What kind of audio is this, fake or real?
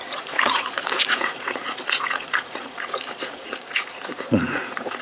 fake